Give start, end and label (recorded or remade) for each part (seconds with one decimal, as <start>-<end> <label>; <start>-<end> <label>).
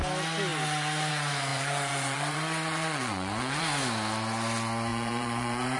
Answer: 0.0-1.5 recorded; 1.5-3.6 remade; 3.6-4.9 recorded; 4.9-5.8 remade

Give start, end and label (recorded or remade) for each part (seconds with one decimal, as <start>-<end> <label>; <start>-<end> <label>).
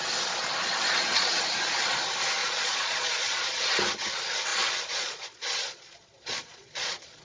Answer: 0.0-0.6 recorded; 0.6-1.4 remade; 1.4-2.4 recorded; 2.4-3.6 remade; 3.6-4.5 recorded; 4.5-7.2 remade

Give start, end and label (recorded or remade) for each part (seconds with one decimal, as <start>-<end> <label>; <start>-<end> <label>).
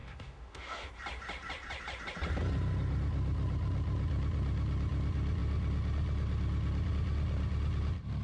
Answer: 0.0-0.9 remade; 0.9-8.2 recorded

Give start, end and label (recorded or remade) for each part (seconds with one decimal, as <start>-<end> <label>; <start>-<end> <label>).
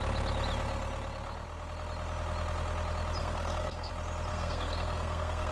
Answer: 0.0-3.2 recorded; 3.2-3.9 remade; 3.9-4.3 recorded; 4.3-5.5 remade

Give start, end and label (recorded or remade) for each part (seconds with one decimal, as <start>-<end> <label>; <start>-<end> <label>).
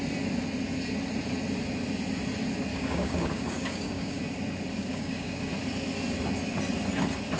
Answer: 0.0-2.7 recorded; 2.7-4.2 remade; 4.2-4.8 recorded; 4.8-5.4 remade; 5.4-7.4 recorded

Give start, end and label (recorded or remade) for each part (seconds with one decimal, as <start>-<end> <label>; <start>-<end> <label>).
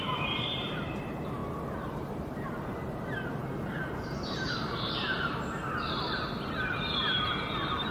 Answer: 0.0-1.4 remade; 1.4-1.9 recorded; 1.9-5.6 remade; 5.6-6.5 recorded; 6.5-7.9 remade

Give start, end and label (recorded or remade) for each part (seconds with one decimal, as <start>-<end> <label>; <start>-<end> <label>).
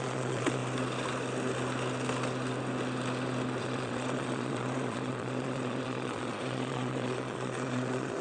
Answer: 0.0-0.6 remade; 0.6-3.6 recorded; 3.6-8.2 remade